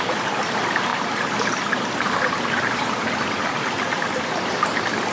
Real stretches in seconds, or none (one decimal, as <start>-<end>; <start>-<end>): 0.0-5.1